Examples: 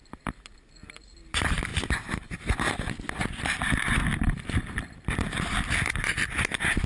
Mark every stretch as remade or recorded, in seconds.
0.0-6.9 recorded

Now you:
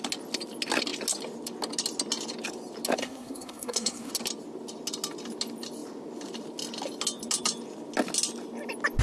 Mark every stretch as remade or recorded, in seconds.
0.0-3.0 recorded; 3.0-4.1 remade; 4.1-9.0 recorded

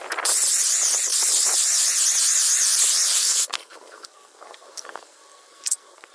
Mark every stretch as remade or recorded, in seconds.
0.0-3.2 recorded; 3.2-6.1 remade

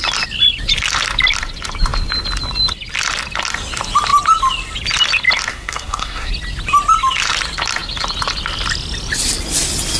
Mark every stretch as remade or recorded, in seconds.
0.0-5.5 recorded; 5.5-6.3 remade; 6.3-10.0 recorded

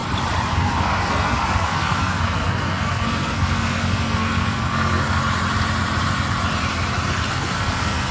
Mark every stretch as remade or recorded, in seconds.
0.0-0.5 recorded; 0.5-5.2 remade; 5.2-7.3 recorded; 7.3-8.1 remade